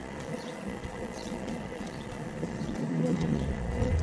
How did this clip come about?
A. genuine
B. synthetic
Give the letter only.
B